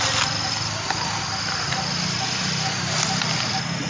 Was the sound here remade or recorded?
recorded